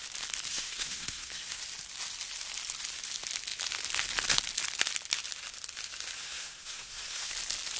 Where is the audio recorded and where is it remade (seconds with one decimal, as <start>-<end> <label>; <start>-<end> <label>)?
0.0-0.5 recorded; 0.5-1.6 remade; 1.6-6.2 recorded; 6.2-7.3 remade; 7.3-7.8 recorded